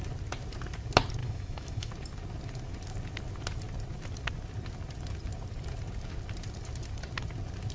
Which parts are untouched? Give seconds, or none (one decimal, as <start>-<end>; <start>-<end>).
0.0-1.2; 1.9-7.7